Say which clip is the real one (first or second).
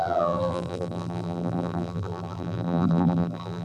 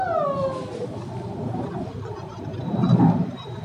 second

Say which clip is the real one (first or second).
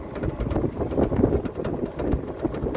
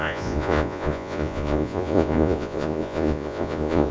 first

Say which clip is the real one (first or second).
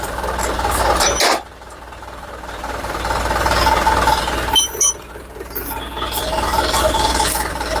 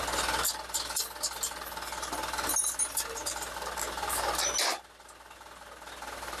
second